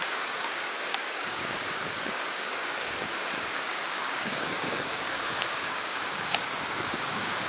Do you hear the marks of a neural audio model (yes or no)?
yes